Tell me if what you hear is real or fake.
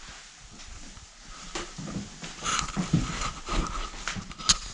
real